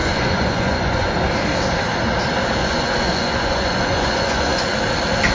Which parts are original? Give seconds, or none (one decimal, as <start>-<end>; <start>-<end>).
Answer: 1.1-2.6; 4.8-5.3